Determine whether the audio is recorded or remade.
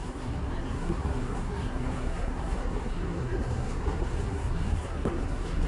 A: remade